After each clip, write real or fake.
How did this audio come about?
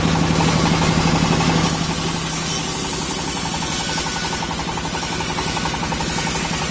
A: real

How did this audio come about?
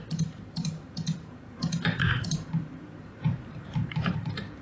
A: fake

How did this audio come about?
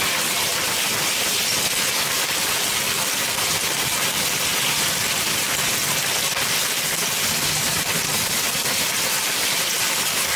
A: real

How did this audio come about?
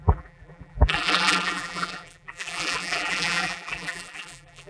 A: fake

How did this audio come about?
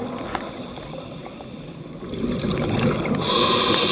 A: fake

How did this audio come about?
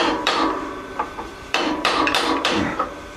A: fake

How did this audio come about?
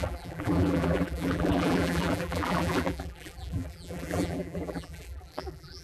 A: fake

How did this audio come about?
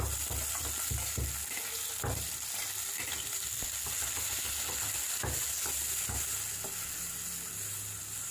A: real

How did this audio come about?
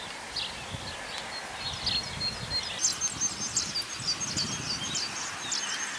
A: real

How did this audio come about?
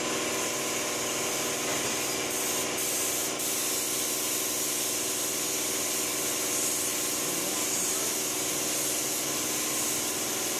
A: real